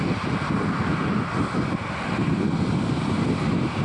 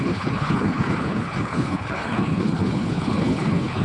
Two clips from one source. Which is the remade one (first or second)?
second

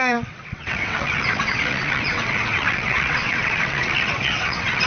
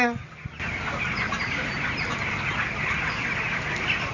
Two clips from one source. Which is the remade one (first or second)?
first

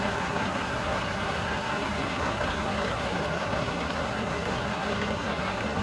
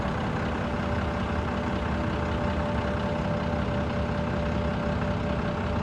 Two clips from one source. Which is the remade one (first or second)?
first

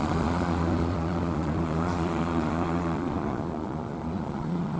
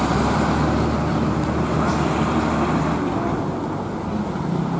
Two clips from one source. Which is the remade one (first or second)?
first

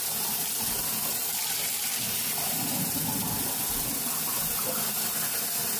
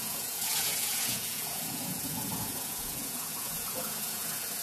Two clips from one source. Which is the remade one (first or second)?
second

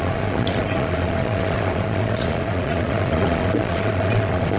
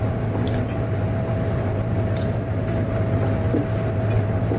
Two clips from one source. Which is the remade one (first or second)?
first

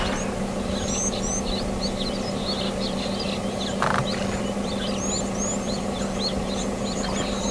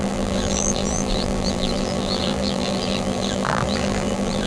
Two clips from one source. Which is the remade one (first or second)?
second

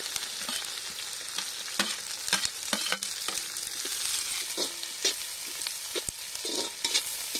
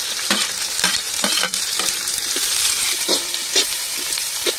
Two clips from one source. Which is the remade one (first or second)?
second